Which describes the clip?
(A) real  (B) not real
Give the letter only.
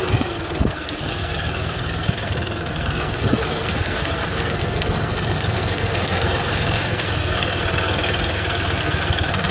B